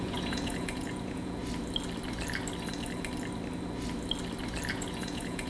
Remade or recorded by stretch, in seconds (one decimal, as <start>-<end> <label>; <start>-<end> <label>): 0.0-1.4 remade; 1.4-4.7 recorded; 4.7-5.5 remade